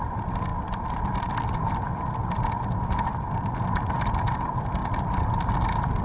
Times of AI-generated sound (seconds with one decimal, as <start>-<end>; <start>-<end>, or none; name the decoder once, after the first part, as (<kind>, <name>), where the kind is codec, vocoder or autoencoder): none